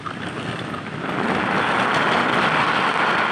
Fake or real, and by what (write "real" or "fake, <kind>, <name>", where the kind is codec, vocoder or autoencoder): real